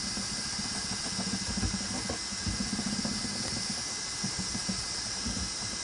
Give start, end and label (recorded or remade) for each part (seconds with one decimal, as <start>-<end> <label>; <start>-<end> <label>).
0.0-5.8 recorded